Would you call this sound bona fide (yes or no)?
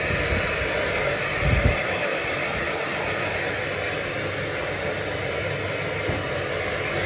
yes